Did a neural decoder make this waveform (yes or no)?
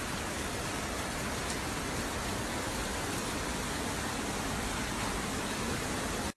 no